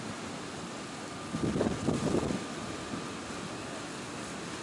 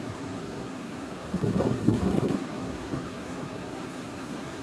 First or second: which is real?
first